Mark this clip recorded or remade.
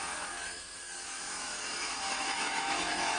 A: remade